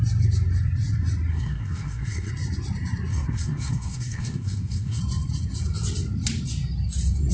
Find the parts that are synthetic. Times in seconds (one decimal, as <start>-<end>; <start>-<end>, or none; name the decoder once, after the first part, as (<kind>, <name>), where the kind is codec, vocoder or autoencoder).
1.3-2.3 (codec, SNAC); 3.1-5.0